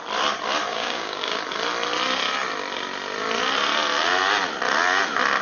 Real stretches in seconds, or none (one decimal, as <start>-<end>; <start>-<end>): 0.0-0.7; 1.4-5.4